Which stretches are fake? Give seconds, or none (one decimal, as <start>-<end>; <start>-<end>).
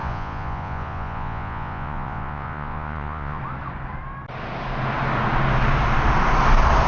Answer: 0.0-3.4